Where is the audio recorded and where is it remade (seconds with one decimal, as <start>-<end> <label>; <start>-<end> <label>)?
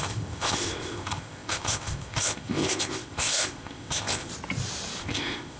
0.0-4.3 remade; 4.3-5.0 recorded; 5.0-5.6 remade